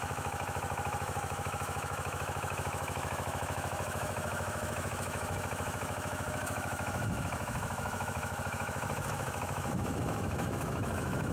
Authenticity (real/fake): fake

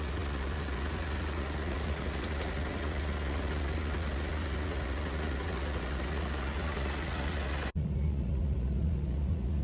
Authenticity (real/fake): fake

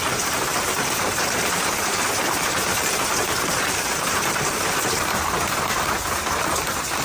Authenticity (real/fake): fake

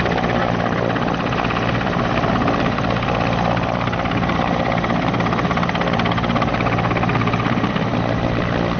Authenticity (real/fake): real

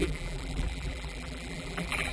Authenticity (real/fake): fake